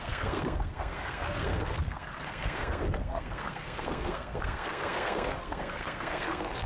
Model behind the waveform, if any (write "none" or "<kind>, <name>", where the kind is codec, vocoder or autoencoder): codec, SNAC